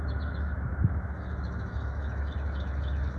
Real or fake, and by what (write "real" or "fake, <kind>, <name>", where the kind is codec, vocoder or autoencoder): fake, autoencoder, DAC-VAE